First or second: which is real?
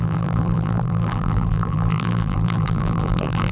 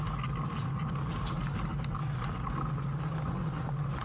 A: second